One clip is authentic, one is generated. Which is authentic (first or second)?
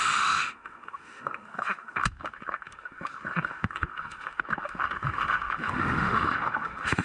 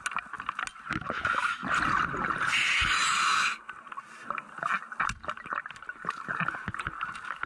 second